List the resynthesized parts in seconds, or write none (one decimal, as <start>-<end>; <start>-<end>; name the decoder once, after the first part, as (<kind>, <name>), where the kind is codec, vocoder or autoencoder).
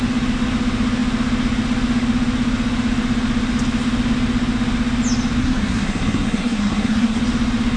5.4-7.2 (codec, SNAC)